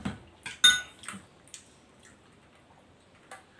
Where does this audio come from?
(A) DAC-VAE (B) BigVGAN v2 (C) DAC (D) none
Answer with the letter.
D